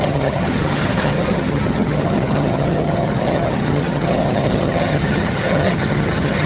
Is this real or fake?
fake